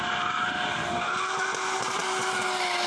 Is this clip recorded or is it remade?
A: recorded